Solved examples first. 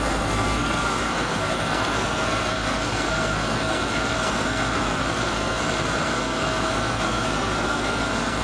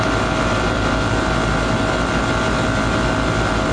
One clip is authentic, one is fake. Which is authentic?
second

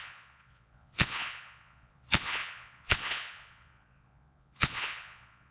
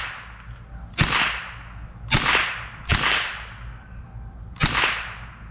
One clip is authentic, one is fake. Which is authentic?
second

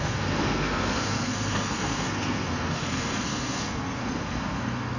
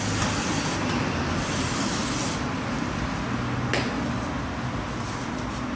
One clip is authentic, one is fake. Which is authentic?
second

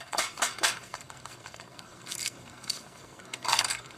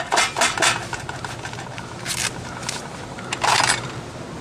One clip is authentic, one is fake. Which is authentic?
second